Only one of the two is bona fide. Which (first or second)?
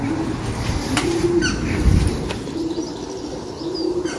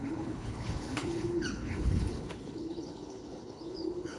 first